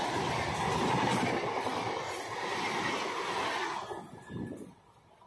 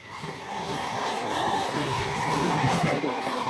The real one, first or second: first